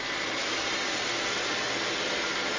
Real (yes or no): yes